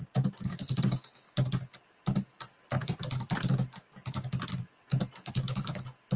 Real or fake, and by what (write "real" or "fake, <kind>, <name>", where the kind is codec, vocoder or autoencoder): real